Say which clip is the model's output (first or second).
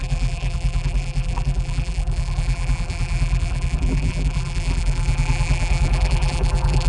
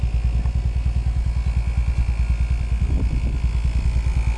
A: first